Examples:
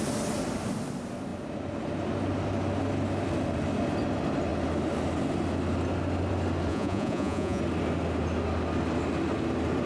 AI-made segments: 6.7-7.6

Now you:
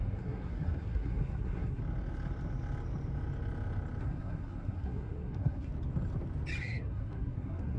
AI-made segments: 0.0-1.8; 4.0-5.7; 6.6-7.8

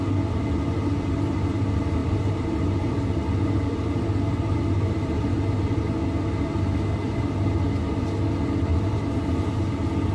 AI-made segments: 2.0-4.6

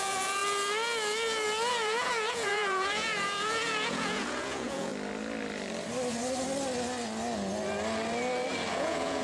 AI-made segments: 0.0-0.4; 1.7-4.9; 8.7-9.2